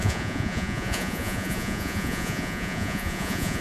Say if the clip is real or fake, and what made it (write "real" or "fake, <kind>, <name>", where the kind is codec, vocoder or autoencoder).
fake, vocoder, Vocos